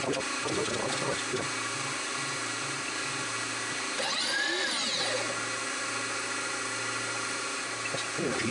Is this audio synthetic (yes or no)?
no